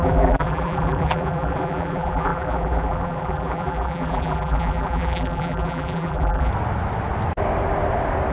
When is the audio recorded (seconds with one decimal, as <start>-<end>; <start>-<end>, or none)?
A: 6.5-8.3